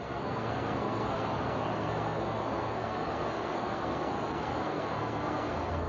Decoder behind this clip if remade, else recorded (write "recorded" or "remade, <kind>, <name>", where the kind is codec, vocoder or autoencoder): remade, codec, SNAC